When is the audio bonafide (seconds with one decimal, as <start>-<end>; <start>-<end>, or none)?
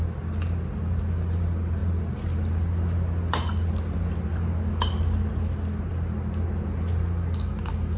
0.0-8.0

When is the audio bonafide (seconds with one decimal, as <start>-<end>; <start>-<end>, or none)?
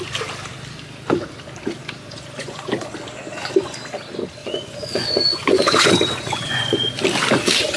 0.0-1.8; 2.7-4.4; 6.9-7.8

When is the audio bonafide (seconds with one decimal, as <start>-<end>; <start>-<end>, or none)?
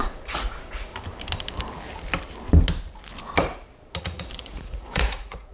0.9-4.0